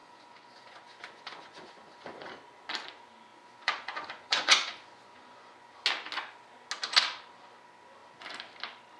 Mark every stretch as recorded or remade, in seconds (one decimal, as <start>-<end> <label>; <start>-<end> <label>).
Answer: 0.0-2.3 remade; 2.3-3.3 recorded; 3.3-5.7 remade; 5.7-9.0 recorded